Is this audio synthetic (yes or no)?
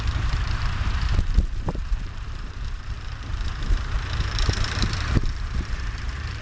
yes